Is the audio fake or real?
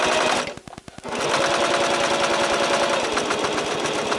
real